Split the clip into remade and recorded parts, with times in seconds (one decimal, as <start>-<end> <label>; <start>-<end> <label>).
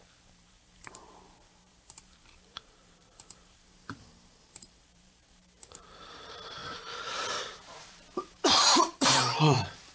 0.0-6.6 remade; 6.6-7.4 recorded; 7.4-9.9 remade